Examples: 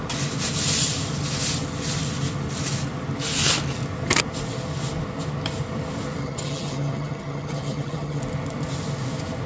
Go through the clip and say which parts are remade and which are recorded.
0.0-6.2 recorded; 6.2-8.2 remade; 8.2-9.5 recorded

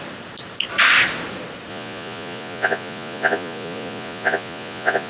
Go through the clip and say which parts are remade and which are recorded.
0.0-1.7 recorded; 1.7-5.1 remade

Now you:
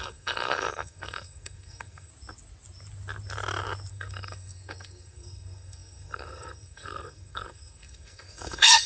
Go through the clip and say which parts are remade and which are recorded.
0.0-2.1 remade; 2.1-3.9 recorded; 3.9-8.9 remade

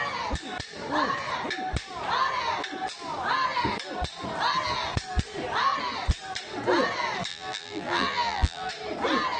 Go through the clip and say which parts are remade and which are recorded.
0.0-7.3 recorded; 7.3-8.7 remade; 8.7-9.4 recorded